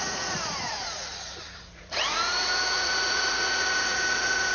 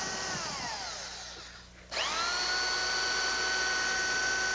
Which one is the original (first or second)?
second